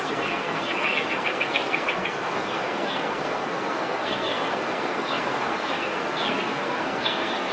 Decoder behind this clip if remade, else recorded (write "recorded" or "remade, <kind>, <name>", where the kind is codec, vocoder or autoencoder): remade, codec, SNAC